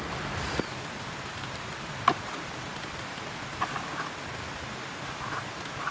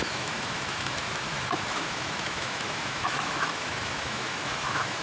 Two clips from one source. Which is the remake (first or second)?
second